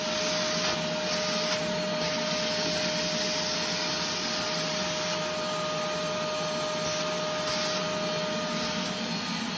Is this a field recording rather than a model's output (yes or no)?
yes